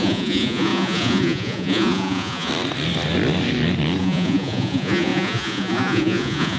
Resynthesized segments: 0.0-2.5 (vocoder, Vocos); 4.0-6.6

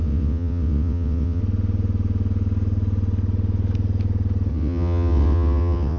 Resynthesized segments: 0.0-1.4 (vocoder, WaveNeXt); 4.5-6.0

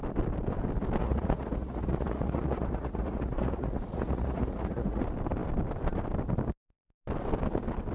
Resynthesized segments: 1.0-5.0 (vocoder, Vocos)

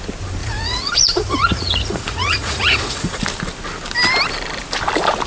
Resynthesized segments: 0.4-3.2 (vocoder, Vocos)

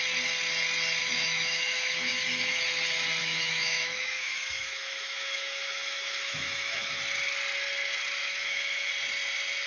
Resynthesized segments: 1.0-2.6 (autoencoder, DAC-VAE); 3.2-7.0; 8.2-8.9